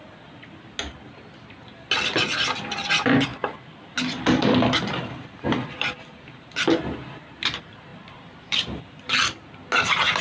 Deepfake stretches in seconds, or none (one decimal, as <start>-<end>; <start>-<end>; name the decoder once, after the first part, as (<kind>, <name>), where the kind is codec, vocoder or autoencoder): 7.9-8.8 (vocoder, BigVGAN v2)